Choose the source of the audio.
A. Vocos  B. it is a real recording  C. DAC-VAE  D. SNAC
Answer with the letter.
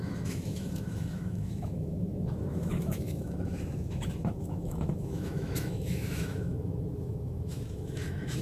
C